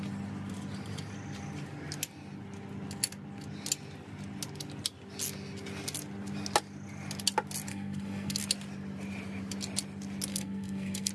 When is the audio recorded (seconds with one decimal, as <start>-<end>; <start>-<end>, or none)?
0.0-7.7; 8.4-10.3